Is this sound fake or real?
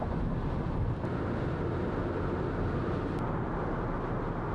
real